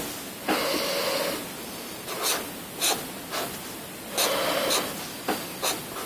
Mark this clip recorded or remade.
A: recorded